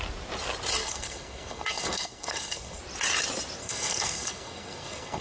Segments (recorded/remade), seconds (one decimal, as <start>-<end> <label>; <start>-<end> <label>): 0.0-0.8 recorded; 0.8-2.8 remade; 2.8-3.6 recorded; 3.6-5.2 remade

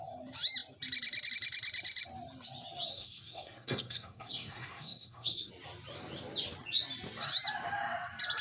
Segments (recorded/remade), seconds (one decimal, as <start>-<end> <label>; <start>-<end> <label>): 0.0-2.9 recorded; 2.9-5.5 remade; 5.5-8.4 recorded

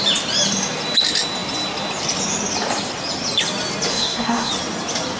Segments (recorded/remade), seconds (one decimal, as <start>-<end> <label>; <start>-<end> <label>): 0.0-3.9 recorded; 3.9-4.5 remade; 4.5-5.2 recorded

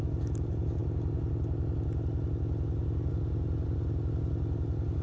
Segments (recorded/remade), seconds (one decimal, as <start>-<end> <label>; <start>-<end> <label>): 0.0-5.0 recorded

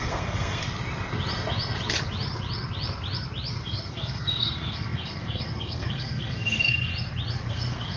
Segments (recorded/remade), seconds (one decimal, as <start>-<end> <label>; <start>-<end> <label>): 0.0-0.6 remade; 0.6-3.6 recorded; 3.6-6.9 remade; 6.9-7.5 recorded; 7.5-8.0 remade